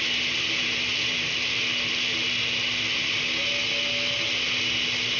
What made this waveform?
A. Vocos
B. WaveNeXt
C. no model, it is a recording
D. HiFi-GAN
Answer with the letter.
C